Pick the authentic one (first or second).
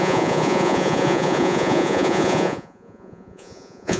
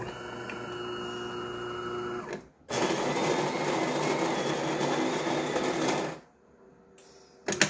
second